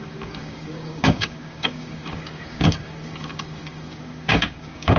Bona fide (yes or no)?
no